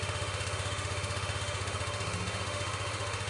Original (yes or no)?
no